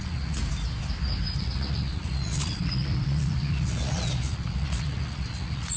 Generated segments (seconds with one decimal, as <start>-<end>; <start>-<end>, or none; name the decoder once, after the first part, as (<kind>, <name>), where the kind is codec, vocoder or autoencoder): 0.0-0.4 (vocoder, Vocos); 1.4-5.8